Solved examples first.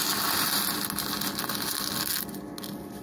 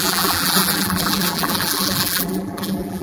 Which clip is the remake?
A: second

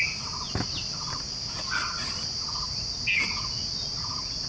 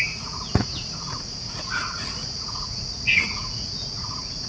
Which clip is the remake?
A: second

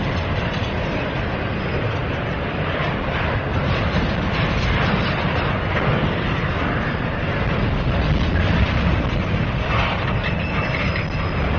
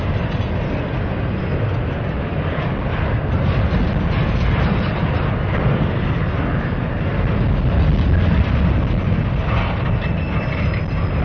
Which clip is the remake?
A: first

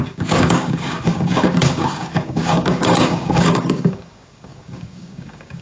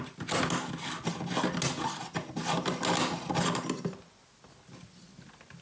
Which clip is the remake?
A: first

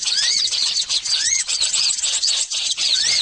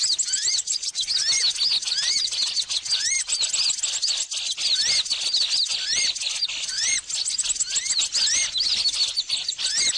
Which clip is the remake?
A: first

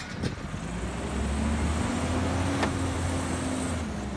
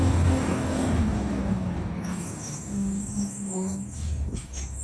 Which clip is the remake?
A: second